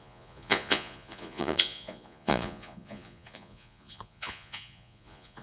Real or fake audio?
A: fake